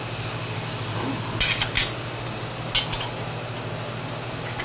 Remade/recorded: recorded